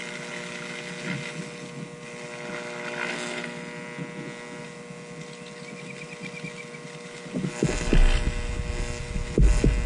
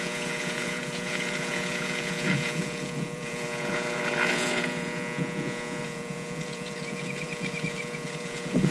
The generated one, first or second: second